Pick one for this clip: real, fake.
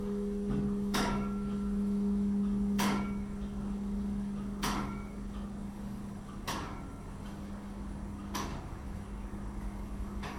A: fake